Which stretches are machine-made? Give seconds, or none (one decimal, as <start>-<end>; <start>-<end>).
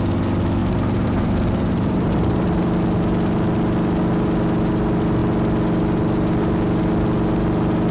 0.6-2.6